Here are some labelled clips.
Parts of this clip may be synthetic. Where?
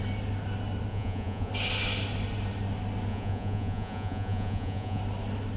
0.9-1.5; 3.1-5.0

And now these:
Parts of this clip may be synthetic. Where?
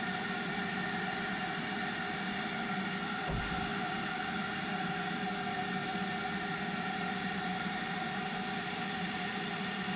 0.0-10.0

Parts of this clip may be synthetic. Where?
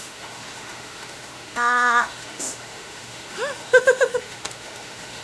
0.0-5.2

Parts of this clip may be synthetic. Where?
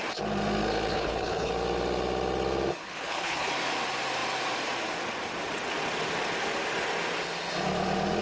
0.9-1.5; 2.8-3.5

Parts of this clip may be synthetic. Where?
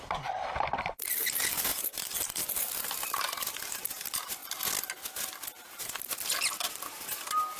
0.0-4.4; 6.7-7.6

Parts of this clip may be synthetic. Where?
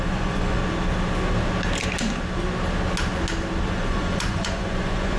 0.0-0.6; 3.7-5.2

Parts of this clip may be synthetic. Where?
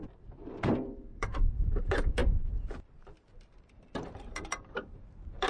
0.0-5.5